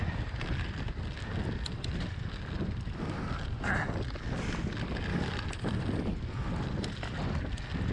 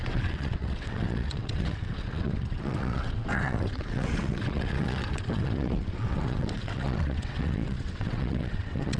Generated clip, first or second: second